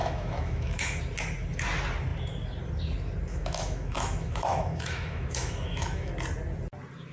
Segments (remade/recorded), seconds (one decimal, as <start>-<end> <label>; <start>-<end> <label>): 0.0-1.0 remade; 1.0-3.3 recorded; 3.3-6.1 remade; 6.1-7.1 recorded